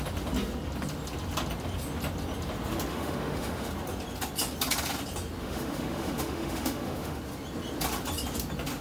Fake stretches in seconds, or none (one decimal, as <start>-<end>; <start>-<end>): 2.9-3.7; 5.4-7.2